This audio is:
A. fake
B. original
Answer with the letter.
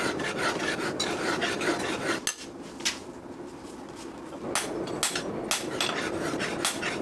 B